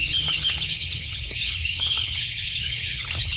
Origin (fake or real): fake